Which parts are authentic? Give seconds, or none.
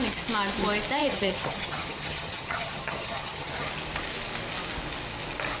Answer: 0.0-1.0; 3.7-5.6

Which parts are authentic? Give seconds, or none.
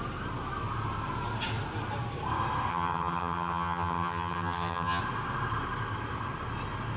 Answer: 0.0-2.7; 5.0-7.0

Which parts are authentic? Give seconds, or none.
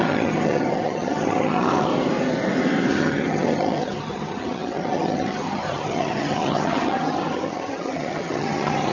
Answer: 1.9-2.9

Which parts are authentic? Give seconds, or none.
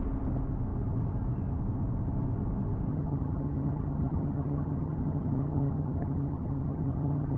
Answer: 0.0-2.9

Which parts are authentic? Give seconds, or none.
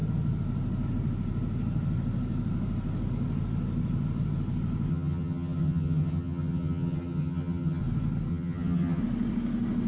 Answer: 0.0-4.9; 7.8-8.3; 9.0-9.9